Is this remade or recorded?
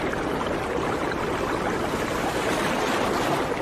recorded